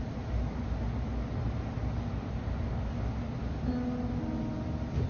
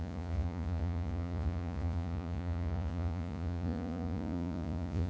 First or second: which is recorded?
first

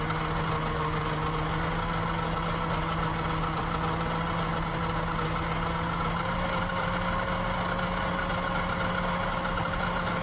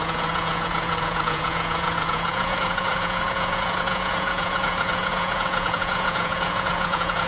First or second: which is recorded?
first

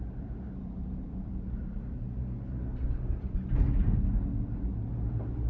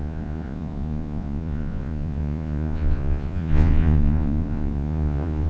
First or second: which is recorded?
first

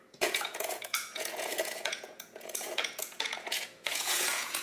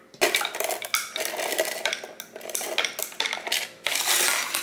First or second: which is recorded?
second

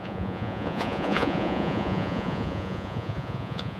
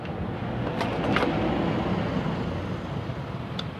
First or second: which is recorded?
second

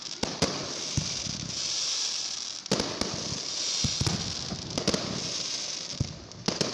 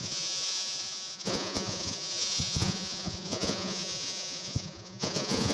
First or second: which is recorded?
first